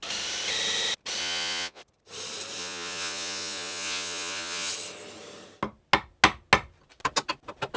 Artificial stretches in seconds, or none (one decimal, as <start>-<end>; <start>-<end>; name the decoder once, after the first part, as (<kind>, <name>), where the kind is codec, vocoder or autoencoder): 1.2-1.8 (vocoder, Vocos); 2.6-4.7